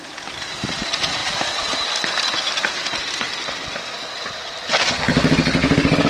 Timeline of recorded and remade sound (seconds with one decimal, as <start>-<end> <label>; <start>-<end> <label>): 0.0-5.6 recorded; 5.6-6.1 remade